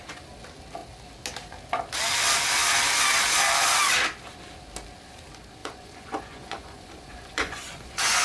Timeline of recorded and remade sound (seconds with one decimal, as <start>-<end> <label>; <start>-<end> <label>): 0.0-5.6 recorded; 5.6-8.2 remade